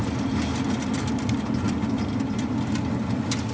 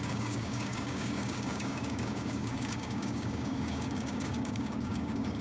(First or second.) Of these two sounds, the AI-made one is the second